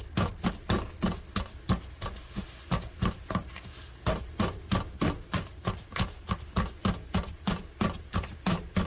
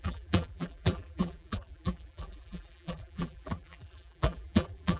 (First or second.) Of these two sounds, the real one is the first